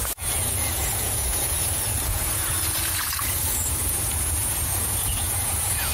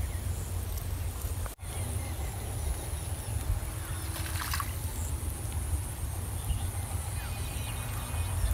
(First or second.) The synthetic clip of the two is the first